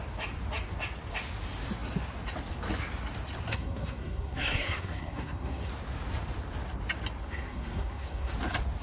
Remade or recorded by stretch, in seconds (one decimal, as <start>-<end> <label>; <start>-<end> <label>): 0.0-3.5 recorded; 3.5-5.7 remade; 5.7-7.2 recorded; 7.2-8.3 remade; 8.3-8.8 recorded